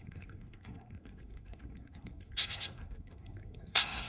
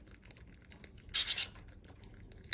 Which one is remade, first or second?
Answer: first